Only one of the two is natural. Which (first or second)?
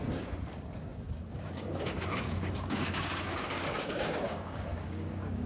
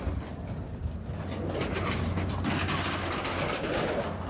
second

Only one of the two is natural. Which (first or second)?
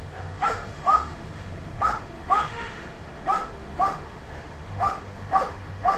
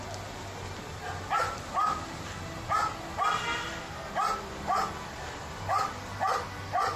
second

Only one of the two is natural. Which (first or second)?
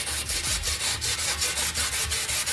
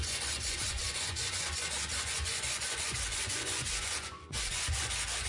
first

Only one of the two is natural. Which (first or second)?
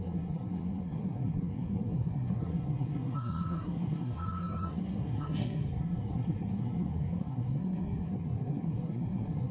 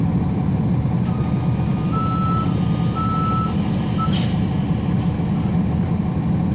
second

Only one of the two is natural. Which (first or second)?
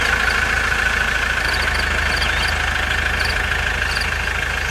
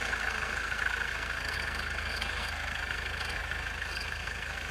first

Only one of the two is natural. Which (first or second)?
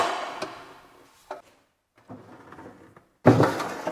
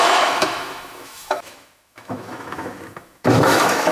first